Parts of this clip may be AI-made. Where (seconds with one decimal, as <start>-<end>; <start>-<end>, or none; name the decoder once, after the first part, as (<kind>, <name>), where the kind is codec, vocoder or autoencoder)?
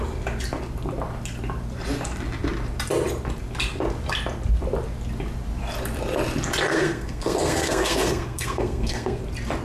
6.7-9.2 (codec, SNAC)